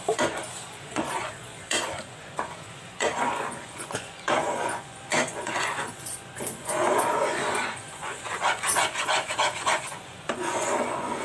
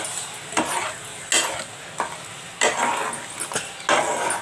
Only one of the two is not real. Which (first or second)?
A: first